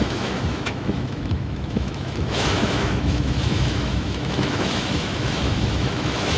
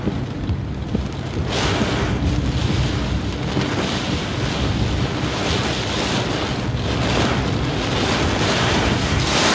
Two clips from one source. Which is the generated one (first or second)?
first